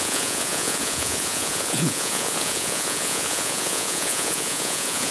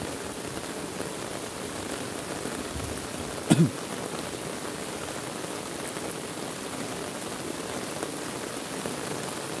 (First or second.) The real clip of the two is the second